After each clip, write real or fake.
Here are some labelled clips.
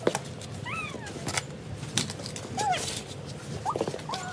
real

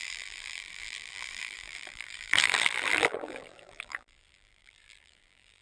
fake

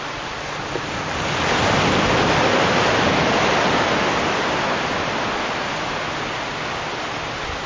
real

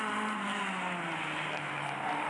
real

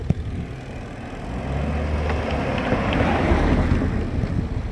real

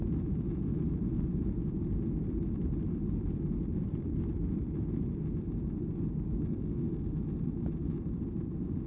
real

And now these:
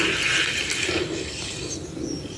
real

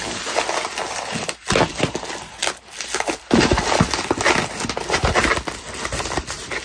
real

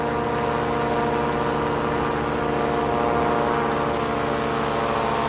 real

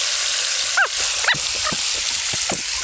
real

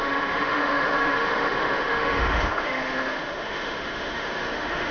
fake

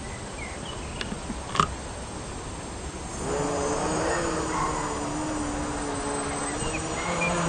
real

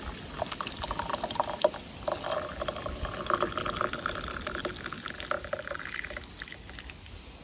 real